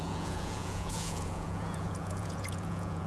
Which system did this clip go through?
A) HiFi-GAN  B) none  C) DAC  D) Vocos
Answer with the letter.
D